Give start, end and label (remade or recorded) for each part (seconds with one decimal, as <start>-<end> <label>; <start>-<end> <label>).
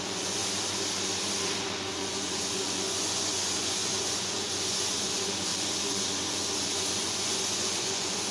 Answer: 0.0-0.4 remade; 0.4-1.6 recorded; 1.6-8.3 remade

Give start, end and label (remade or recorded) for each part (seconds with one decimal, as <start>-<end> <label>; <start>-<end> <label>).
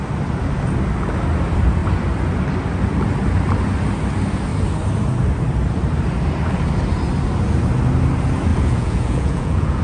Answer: 0.0-8.5 recorded; 8.5-9.8 remade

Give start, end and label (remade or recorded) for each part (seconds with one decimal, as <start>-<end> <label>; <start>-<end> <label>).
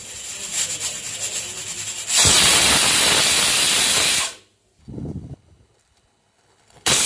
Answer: 0.0-4.8 recorded; 4.8-7.1 remade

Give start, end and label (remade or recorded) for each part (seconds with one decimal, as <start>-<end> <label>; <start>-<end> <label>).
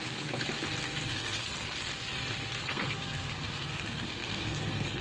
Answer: 0.0-0.5 remade; 0.5-1.1 recorded; 1.1-1.5 remade; 1.5-2.6 recorded; 2.6-5.0 remade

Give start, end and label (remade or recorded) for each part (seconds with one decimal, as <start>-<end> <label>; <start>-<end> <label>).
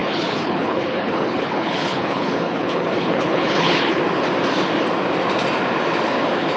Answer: 0.0-4.0 remade; 4.0-6.6 recorded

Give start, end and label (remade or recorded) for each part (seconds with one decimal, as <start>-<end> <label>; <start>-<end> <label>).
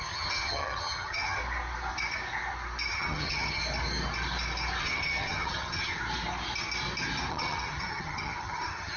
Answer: 0.0-1.4 remade; 1.4-2.9 recorded; 2.9-3.6 remade; 3.6-4.8 recorded; 4.8-6.0 remade; 6.0-7.3 recorded; 7.3-9.0 remade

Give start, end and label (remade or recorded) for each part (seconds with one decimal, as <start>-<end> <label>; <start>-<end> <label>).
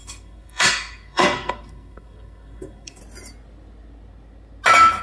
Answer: 0.0-3.0 remade; 3.0-5.0 recorded